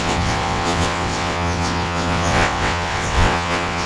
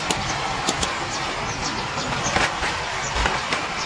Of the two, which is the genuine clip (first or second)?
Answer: second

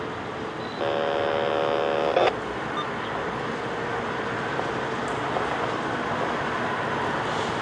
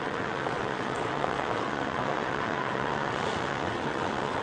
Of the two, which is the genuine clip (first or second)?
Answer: first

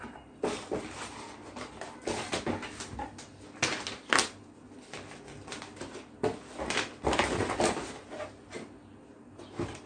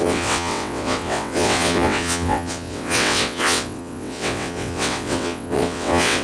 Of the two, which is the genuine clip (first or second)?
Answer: first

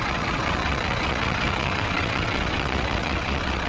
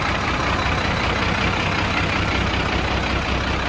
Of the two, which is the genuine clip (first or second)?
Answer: second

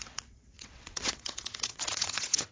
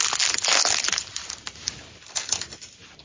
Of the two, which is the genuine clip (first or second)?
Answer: second